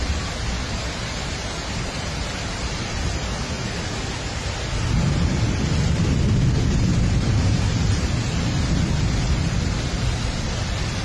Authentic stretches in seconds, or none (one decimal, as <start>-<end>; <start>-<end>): 0.0-11.0